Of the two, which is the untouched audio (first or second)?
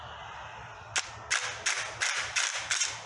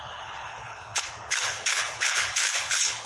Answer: first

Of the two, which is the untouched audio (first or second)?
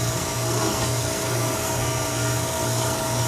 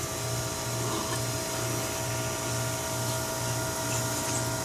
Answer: second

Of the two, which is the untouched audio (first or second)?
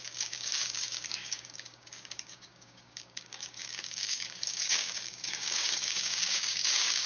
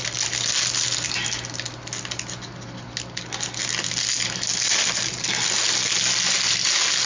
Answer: second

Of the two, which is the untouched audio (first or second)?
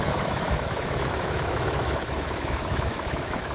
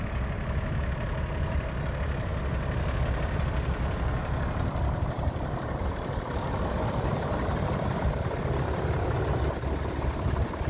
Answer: second